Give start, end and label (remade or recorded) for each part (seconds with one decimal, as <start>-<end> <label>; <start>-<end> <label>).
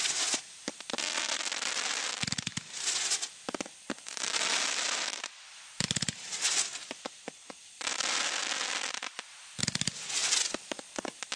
0.0-2.5 remade; 2.5-4.0 recorded; 4.0-11.4 remade